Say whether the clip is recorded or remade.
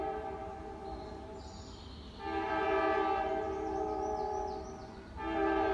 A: recorded